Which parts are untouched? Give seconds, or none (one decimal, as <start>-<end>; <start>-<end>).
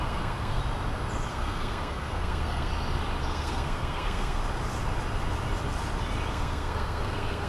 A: 0.6-1.3; 2.7-3.2; 4.4-6.3